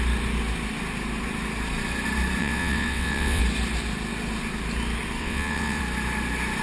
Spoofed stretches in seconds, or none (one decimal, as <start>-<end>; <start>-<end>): 2.4-3.4; 5.2-5.8